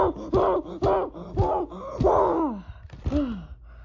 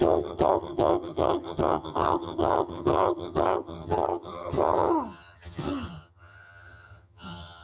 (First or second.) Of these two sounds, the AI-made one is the second